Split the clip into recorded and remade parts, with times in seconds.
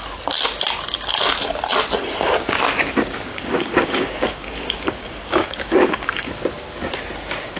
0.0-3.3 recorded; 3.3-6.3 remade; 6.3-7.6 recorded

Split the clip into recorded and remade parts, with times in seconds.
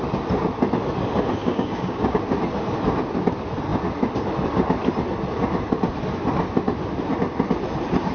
0.0-1.4 recorded; 1.4-2.2 remade; 2.2-8.1 recorded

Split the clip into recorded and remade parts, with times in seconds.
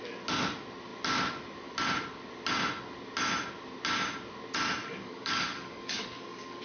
0.0-4.8 recorded; 4.8-6.6 remade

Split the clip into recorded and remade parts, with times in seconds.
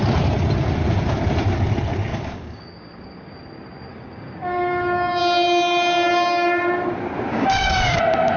0.0-2.1 recorded; 2.1-3.3 remade; 3.3-3.9 recorded; 3.9-5.2 remade; 5.2-7.3 recorded; 7.3-8.0 remade; 8.0-8.4 recorded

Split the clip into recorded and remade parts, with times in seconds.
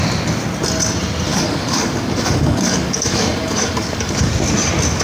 0.0-1.3 recorded; 1.3-4.3 remade; 4.3-5.0 recorded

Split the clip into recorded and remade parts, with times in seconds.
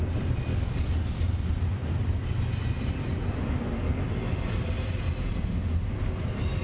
0.0-0.5 recorded; 0.5-1.3 remade; 1.3-6.6 recorded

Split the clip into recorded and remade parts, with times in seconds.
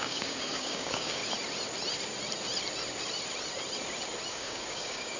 0.0-1.2 remade; 1.2-4.3 recorded; 4.3-5.2 remade